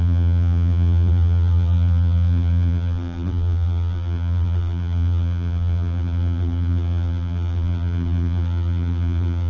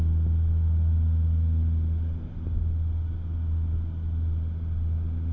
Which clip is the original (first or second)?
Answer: second